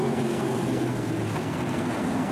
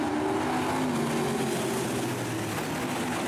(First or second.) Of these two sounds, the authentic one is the second